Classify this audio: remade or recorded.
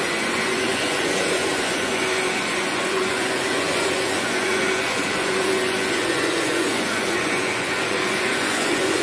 remade